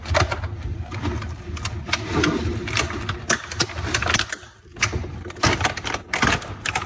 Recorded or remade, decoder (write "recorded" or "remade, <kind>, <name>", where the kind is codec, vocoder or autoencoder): recorded